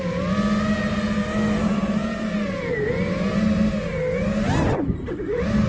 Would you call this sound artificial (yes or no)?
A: no